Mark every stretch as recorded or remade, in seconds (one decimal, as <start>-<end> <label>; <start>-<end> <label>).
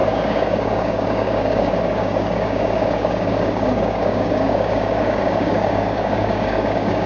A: 0.0-7.1 remade